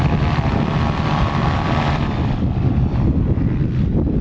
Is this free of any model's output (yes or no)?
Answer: no